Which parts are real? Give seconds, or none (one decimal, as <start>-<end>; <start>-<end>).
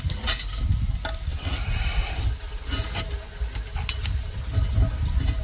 0.0-5.4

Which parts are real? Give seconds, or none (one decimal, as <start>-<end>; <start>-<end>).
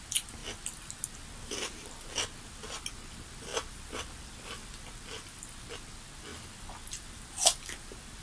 0.0-8.2